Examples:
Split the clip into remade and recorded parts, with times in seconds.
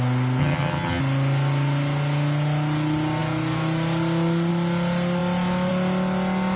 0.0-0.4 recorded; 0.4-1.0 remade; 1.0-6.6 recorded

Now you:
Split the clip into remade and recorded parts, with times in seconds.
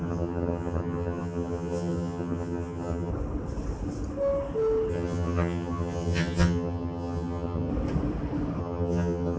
0.0-3.1 remade; 3.1-4.9 recorded; 4.9-7.7 remade; 7.7-8.6 recorded; 8.6-9.4 remade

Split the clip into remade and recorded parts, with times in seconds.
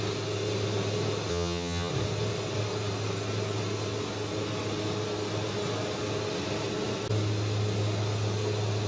0.0-1.3 recorded; 1.3-1.9 remade; 1.9-8.9 recorded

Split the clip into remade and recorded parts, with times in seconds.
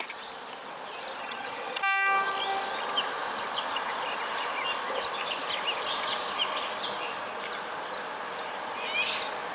0.0-1.2 recorded; 1.2-1.8 remade; 1.8-9.5 recorded